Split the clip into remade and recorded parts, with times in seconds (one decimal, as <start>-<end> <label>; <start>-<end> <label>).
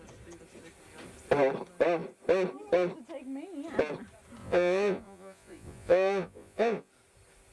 0.0-4.4 recorded; 4.4-6.9 remade; 6.9-7.5 recorded